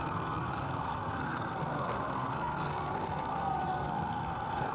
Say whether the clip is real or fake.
fake